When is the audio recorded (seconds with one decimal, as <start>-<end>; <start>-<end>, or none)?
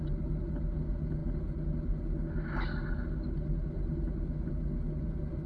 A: 0.0-5.5